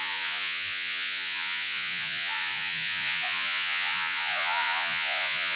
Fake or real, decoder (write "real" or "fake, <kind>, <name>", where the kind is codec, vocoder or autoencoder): fake, vocoder, Vocos